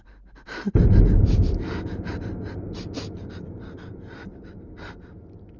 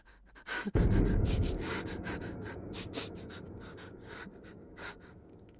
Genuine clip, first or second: first